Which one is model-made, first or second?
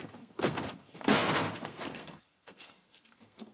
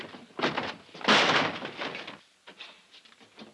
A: first